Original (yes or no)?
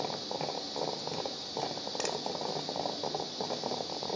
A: yes